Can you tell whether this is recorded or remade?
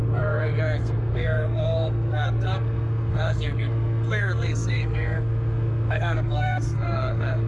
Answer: remade